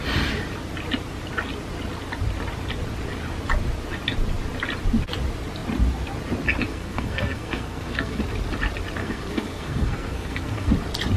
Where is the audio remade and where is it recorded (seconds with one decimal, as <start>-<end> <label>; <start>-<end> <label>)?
0.0-6.7 recorded; 6.7-8.2 remade; 8.2-9.0 recorded; 9.0-10.7 remade; 10.7-11.2 recorded